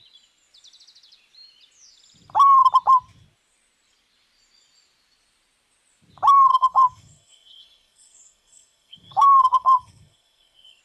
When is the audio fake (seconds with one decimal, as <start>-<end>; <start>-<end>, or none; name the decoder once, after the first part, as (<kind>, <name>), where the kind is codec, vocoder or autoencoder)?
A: 6.5-10.8 (codec, SNAC)